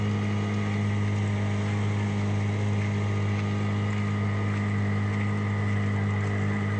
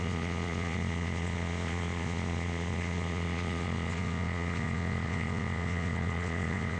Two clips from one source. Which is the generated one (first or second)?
second